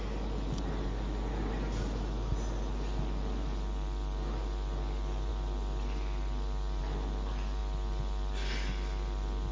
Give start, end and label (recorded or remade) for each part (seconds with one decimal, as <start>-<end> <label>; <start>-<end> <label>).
0.0-9.5 recorded